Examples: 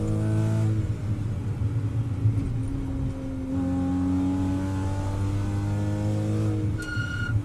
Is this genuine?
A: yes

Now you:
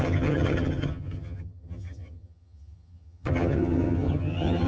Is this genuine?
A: no